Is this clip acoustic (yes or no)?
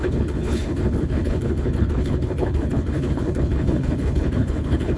no